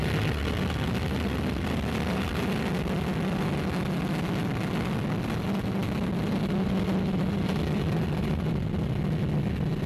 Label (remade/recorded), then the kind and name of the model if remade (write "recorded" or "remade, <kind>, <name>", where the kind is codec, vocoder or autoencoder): recorded